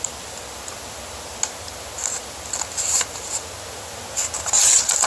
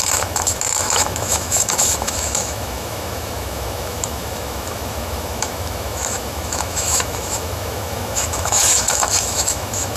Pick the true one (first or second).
first